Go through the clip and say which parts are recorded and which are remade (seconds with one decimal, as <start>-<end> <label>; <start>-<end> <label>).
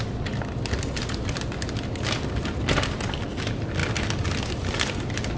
0.0-5.4 recorded